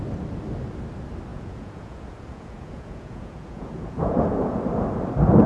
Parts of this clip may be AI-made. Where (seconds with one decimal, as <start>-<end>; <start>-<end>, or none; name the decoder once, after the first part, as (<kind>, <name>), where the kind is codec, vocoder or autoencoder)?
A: 1.3-4.6 (vocoder, Vocos)